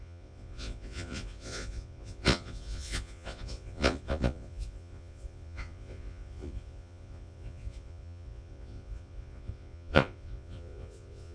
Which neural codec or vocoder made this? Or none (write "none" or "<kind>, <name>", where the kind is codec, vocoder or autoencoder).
vocoder, Vocos